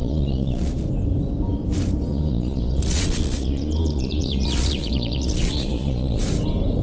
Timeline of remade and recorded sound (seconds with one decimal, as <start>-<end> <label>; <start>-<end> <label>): 0.0-0.7 remade; 0.7-2.1 recorded; 2.1-6.2 remade; 6.2-6.8 recorded